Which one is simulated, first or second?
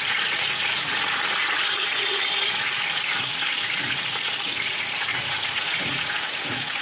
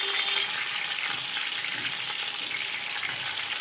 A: first